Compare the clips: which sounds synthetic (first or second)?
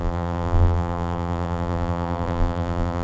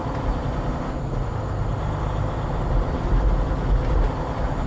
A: first